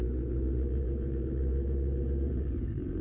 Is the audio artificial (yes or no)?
yes